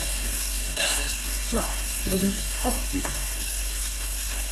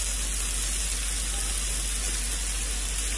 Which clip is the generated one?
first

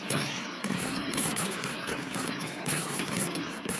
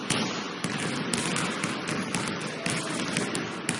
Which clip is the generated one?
first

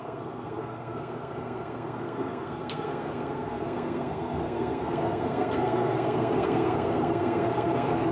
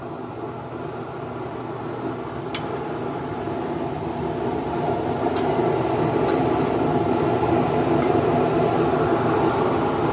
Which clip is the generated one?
first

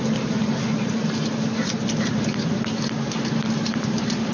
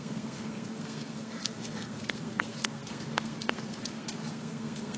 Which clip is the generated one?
second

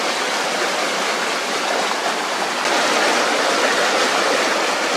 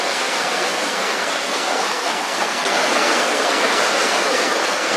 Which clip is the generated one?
second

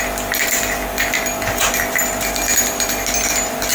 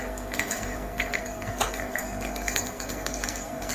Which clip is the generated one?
second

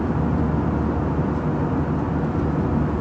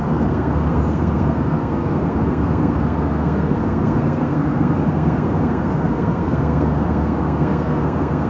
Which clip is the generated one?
second